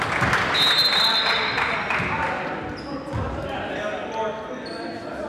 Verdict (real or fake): real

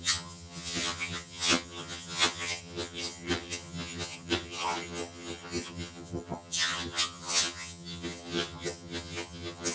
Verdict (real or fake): fake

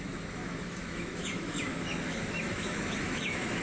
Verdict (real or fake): fake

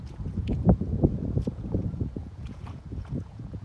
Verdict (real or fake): fake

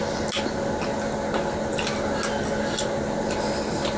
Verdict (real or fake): real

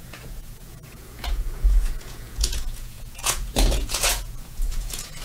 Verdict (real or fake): fake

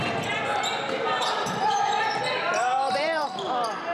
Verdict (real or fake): fake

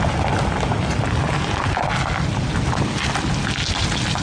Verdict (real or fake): real